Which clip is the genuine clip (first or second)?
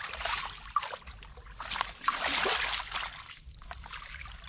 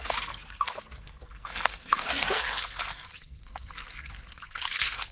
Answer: first